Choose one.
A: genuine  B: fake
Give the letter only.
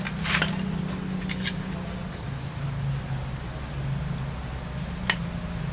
A